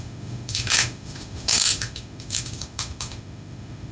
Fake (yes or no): yes